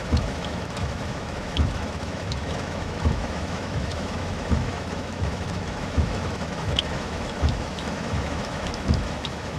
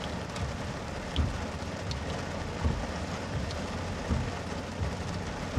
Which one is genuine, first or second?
second